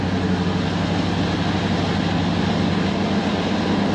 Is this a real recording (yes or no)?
yes